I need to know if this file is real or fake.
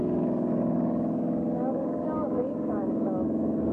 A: fake